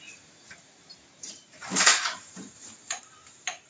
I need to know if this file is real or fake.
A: fake